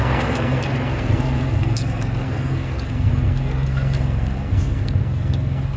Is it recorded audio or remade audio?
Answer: remade